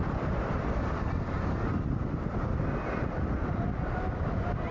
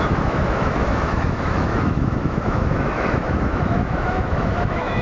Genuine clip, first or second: first